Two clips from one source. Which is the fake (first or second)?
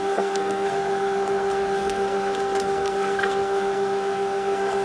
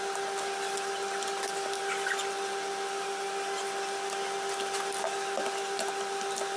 first